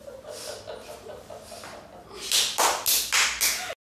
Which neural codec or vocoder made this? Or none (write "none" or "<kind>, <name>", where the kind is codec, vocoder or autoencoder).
none